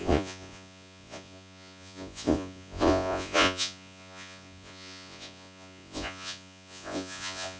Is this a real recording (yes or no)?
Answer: no